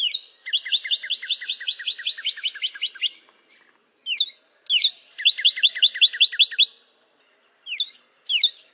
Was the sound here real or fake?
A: real